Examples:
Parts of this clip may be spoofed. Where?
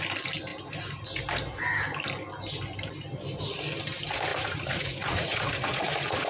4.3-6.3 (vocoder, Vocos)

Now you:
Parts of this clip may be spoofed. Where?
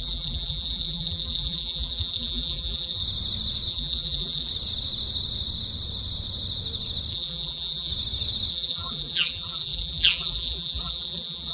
0.0-3.0 (vocoder, BigVGAN v2); 3.7-4.5; 7.1-7.9; 8.5-11.5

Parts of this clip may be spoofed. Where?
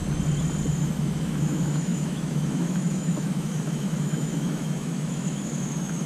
0.7-6.1 (autoencoder, DAC-VAE)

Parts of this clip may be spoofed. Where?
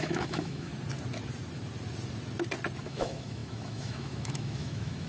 0.0-0.7 (autoencoder, DAC-VAE); 2.8-5.1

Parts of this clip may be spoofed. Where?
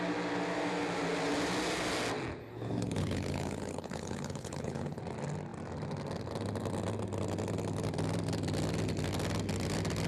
2.4-5.0 (codec, HILCodec)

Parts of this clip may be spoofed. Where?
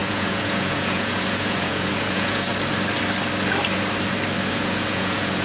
0.0-2.5 (vocoder, Vocos); 4.5-5.4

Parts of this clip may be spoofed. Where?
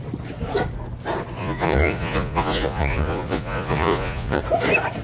1.4-4.4 (vocoder, Vocos)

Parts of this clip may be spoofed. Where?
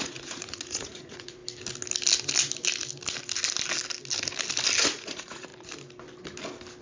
0.0-1.4 (vocoder, Vocos); 4.8-5.5